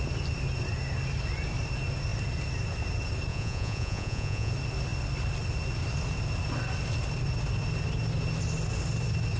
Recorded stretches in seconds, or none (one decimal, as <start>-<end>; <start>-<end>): 0.0-3.3; 4.5-9.4

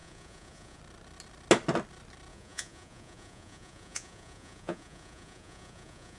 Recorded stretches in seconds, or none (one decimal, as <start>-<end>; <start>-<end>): 0.8-2.3

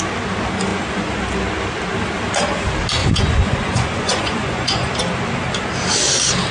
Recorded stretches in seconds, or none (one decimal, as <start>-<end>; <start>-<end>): 0.0-0.7; 1.2-3.0; 4.9-6.5

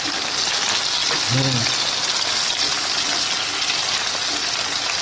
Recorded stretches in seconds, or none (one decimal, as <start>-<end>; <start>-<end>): 0.0-5.0

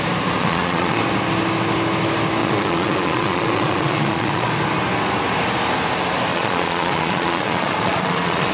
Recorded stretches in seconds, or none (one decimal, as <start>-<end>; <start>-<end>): 0.0-0.4; 1.0-2.4; 4.5-6.3

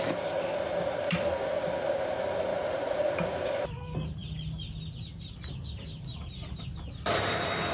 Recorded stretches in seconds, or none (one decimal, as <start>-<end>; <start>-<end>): 0.0-2.5; 3.5-7.7

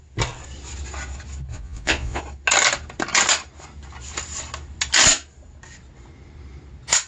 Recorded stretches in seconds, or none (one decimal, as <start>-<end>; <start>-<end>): 0.0-1.5; 2.2-7.1